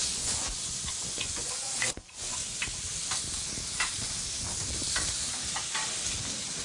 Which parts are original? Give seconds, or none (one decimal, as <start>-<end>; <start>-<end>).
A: 2.4-6.6